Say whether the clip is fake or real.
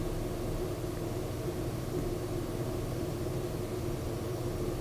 real